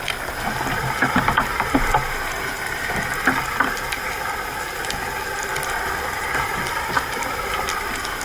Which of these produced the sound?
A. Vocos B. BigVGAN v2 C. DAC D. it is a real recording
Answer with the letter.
D